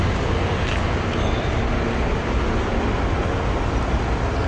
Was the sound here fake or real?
real